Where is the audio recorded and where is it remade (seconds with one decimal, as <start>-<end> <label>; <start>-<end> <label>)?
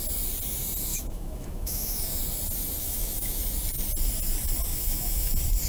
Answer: 0.0-0.9 recorded; 0.9-2.2 remade; 2.2-2.8 recorded; 2.8-3.4 remade; 3.4-4.7 recorded; 4.7-5.3 remade; 5.3-5.7 recorded